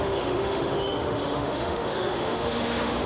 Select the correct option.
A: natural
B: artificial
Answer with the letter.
B